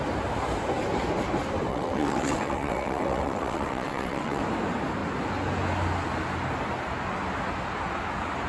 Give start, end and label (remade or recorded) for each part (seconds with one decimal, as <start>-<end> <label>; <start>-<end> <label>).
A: 0.0-1.7 recorded; 1.7-4.4 remade; 4.4-8.5 recorded